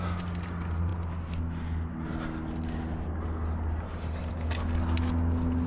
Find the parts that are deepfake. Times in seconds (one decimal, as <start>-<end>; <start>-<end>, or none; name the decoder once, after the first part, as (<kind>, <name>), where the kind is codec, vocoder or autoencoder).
none